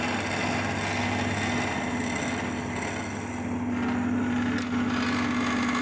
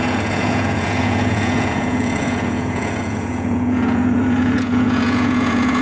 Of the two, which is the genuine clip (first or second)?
first